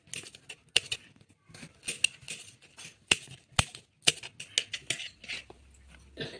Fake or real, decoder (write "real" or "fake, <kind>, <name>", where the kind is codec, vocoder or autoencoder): real